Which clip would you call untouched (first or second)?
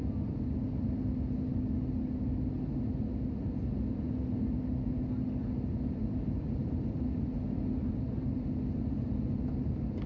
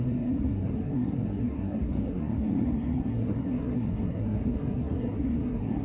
first